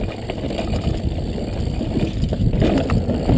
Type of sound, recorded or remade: recorded